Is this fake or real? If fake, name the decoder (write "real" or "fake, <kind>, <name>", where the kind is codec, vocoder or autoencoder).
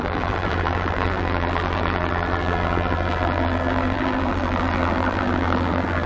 fake, vocoder, BigVGAN v2